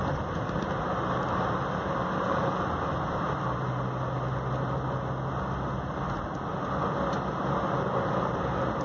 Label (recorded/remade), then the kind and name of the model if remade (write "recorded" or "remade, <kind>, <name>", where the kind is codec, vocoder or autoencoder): recorded